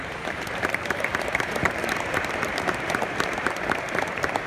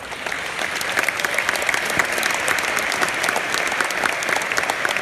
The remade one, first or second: first